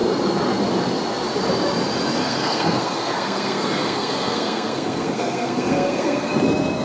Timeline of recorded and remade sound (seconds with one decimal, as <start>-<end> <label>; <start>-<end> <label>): 0.0-2.2 recorded; 2.2-6.3 remade; 6.3-6.8 recorded